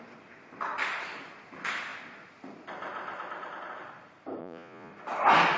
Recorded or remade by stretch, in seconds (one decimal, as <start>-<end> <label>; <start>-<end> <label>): 0.0-4.4 recorded; 4.4-4.9 remade; 4.9-5.6 recorded